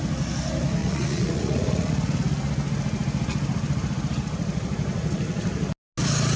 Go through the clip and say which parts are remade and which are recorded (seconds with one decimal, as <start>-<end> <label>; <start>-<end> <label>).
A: 0.0-0.8 recorded; 0.8-1.9 remade; 1.9-6.4 recorded